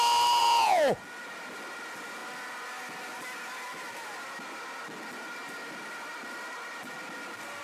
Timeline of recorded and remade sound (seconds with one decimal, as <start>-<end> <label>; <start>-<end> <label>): 0.0-0.4 recorded; 0.4-1.0 remade; 1.0-7.6 recorded